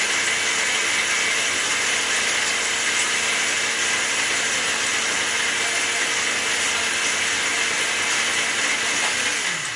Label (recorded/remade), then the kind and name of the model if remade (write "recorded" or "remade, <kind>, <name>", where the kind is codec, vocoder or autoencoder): recorded